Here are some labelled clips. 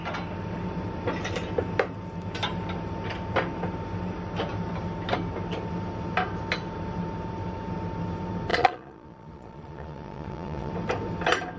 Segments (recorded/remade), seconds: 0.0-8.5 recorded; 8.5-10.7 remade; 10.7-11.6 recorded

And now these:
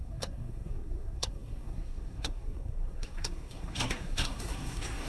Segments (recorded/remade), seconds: 0.0-5.1 remade